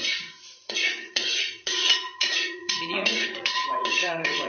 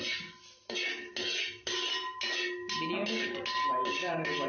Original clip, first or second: second